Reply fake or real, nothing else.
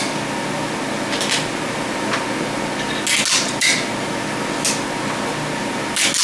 real